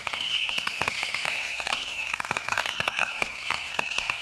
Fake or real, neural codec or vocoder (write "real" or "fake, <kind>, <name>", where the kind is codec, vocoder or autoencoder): fake, codec, SNAC